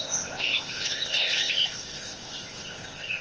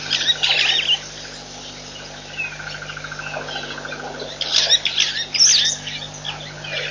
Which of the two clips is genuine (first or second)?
second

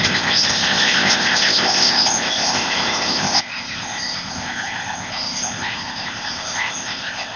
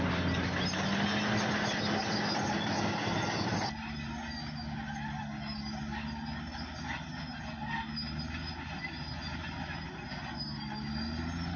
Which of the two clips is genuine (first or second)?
second